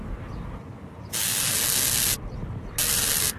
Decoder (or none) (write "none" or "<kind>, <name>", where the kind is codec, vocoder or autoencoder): none